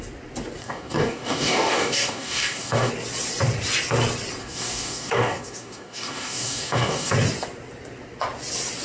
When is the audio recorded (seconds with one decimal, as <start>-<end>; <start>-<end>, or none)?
0.0-0.6; 2.9-4.4; 7.1-8.8